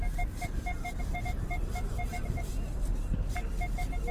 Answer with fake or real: fake